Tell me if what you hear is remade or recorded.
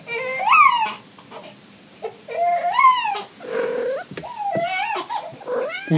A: recorded